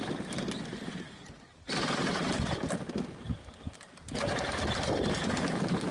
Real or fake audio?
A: real